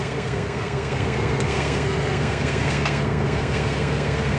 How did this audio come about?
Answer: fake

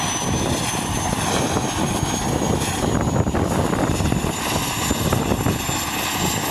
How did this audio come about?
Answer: real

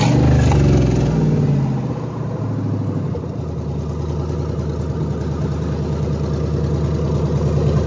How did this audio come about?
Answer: real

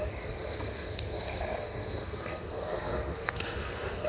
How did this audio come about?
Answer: fake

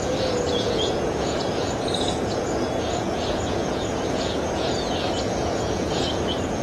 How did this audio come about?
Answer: fake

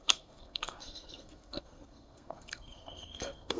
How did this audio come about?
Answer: fake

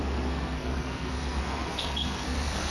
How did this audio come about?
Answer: fake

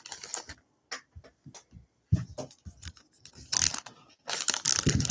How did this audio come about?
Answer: real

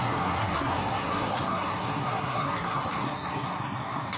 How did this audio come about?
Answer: fake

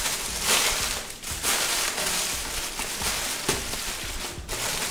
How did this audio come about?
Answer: fake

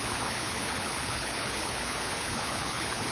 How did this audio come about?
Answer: fake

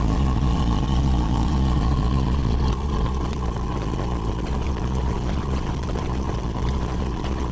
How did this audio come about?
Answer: fake